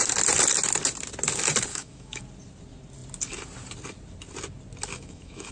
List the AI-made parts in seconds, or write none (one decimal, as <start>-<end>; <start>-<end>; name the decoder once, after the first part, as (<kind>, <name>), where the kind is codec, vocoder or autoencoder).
1.7-2.2 (autoencoder, DAC-VAE); 4.9-5.5

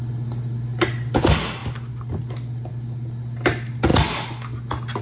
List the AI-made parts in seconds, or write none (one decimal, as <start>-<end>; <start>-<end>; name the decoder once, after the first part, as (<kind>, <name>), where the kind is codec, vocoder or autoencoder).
none

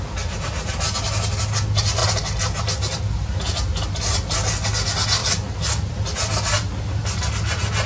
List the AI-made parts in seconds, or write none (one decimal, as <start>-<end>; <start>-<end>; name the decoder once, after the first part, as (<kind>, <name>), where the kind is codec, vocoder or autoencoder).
none

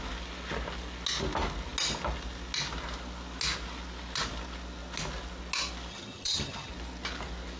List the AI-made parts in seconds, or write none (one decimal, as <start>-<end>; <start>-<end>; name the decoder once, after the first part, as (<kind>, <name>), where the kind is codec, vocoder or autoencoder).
5.9-6.7 (vocoder, HiFi-GAN)